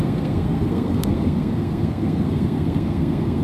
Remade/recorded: remade